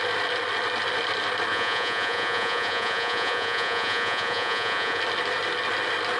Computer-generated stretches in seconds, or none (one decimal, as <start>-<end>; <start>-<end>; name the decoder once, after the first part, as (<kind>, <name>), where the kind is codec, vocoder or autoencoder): 1.5-5.0 (vocoder, Vocos)